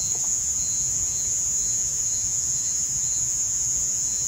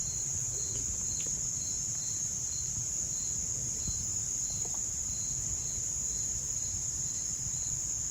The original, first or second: second